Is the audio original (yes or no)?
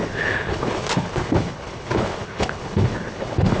no